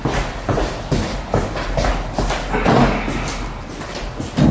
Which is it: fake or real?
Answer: fake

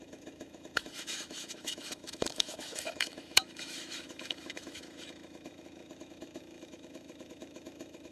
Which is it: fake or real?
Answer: fake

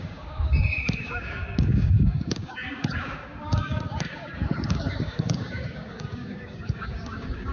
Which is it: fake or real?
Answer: fake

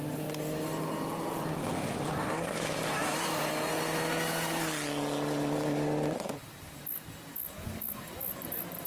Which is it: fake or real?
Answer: real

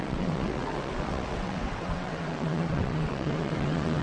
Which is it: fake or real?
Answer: fake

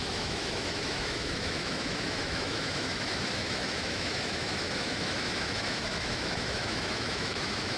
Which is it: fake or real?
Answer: fake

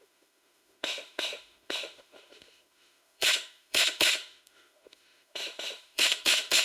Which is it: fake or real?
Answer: fake